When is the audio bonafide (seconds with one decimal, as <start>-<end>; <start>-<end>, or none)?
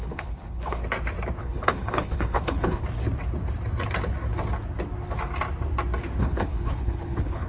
0.8-1.4; 2.8-6.2